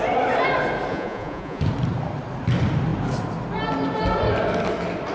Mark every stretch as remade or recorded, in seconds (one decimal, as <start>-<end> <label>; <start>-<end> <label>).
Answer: 0.0-0.9 recorded; 0.9-1.6 remade; 1.6-5.1 recorded